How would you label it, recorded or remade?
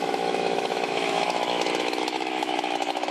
remade